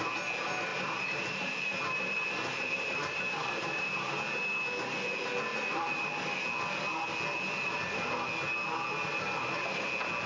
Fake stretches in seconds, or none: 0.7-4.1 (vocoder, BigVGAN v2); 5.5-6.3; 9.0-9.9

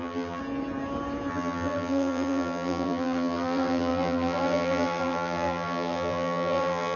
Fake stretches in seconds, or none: 0.0-0.4 (vocoder, BigVGAN v2); 1.3-7.0

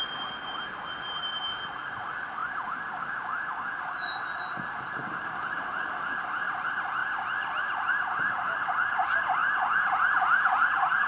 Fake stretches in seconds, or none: 2.4-4.4 (vocoder, BigVGAN v2); 9.4-10.2

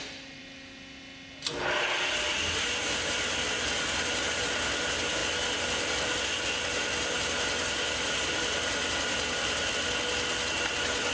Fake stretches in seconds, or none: none

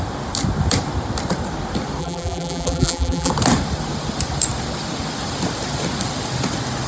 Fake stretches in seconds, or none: 2.0-3.3 (vocoder, BigVGAN v2)

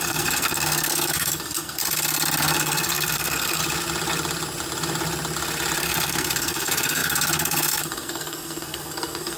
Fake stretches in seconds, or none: 0.0-1.8 (codec, SNAC); 2.4-3.6; 5.8-9.4

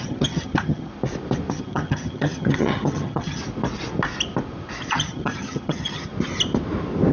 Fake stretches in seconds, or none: 0.0-0.9 (vocoder, HiFi-GAN); 1.5-3.4; 4.9-6.1